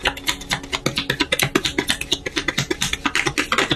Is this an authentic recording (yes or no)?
yes